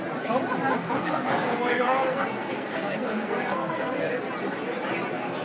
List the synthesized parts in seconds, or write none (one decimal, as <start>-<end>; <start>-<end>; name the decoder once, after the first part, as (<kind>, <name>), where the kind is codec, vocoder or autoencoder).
0.8-4.0 (codec, SNAC)